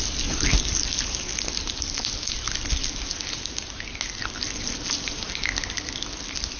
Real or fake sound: real